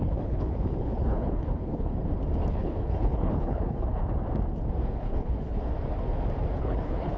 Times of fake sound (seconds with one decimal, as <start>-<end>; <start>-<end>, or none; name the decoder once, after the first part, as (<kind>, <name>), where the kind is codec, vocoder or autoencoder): 0.0-1.9 (codec, HILCodec); 2.5-4.0; 4.9-5.7; 6.6-7.2